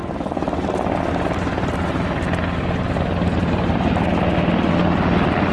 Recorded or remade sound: recorded